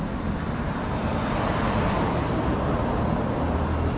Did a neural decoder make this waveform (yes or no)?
no